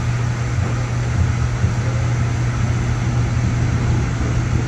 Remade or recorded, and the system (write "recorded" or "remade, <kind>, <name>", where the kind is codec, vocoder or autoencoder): recorded